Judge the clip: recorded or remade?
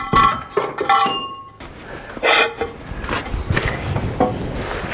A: recorded